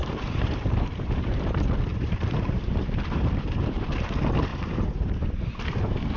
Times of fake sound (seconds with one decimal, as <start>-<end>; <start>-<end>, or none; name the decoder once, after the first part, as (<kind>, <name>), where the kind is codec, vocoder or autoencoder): 0.0-1.5 (vocoder, BigVGAN v2); 1.9-3.9; 4.5-5.3